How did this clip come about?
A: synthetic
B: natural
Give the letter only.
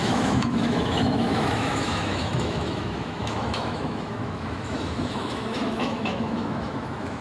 A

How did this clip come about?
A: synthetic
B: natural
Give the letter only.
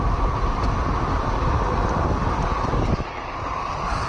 B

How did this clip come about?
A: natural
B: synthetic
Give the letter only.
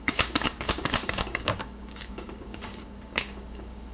B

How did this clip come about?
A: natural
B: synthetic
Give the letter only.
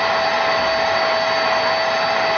A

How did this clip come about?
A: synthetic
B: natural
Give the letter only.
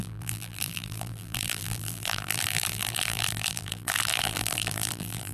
A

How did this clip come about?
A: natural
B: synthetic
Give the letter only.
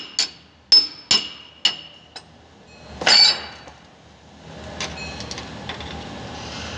A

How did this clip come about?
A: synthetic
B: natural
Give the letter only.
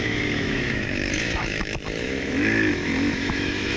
A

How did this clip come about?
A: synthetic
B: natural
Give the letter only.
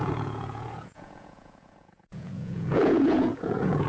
A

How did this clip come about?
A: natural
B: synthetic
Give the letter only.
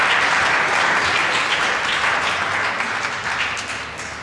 A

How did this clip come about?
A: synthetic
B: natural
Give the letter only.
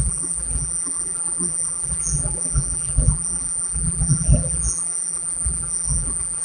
A